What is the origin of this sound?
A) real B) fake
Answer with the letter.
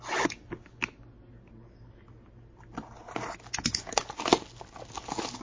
A